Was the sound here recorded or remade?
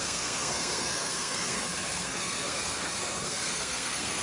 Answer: remade